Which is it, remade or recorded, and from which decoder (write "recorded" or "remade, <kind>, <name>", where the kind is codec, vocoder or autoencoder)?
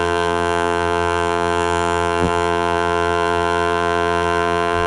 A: remade, vocoder, BigVGAN v2